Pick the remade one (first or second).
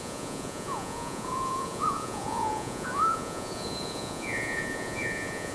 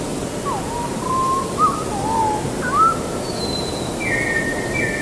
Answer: first